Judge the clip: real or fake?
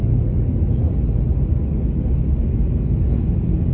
real